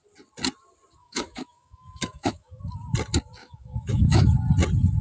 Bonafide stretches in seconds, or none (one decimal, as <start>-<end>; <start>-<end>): 0.0-1.0; 2.6-3.4; 4.3-5.0